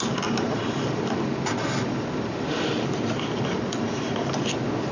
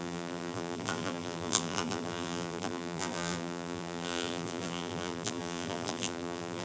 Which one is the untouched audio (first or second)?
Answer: first